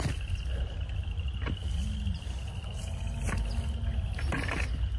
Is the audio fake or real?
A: real